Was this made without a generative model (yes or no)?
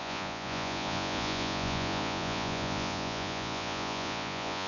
no